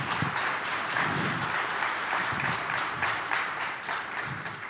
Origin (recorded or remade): remade